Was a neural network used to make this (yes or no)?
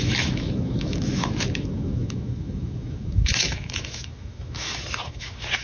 yes